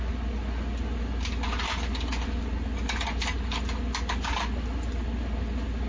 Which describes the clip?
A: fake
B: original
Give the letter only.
B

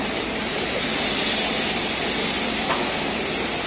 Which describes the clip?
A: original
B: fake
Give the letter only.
A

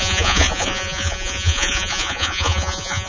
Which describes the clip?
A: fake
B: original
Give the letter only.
A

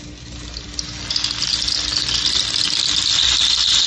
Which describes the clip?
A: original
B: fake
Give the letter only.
A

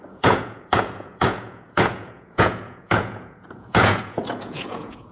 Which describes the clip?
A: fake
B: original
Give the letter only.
A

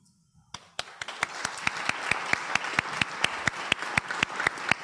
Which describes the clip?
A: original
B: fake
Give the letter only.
A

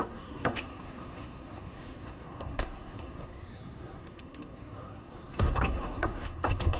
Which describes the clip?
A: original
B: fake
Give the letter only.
B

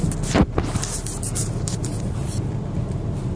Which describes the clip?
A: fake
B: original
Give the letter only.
B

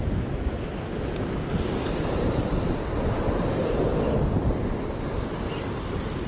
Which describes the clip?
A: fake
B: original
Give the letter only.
B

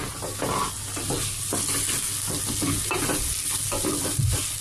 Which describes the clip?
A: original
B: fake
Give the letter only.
A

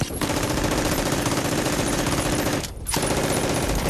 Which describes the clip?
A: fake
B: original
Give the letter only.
A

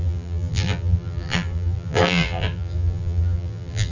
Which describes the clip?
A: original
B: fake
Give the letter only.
B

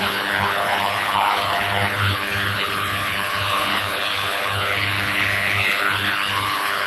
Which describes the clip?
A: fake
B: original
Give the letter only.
A